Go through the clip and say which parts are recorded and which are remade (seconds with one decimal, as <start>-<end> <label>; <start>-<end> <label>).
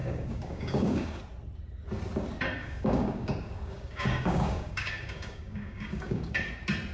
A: 0.0-1.2 remade; 1.2-2.6 recorded; 2.6-6.3 remade; 6.3-6.9 recorded